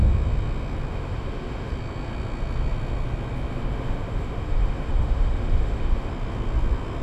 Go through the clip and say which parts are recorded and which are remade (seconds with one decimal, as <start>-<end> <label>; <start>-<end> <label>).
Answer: 0.0-0.9 recorded; 0.9-1.7 remade; 1.7-3.5 recorded; 3.5-6.1 remade; 6.1-7.0 recorded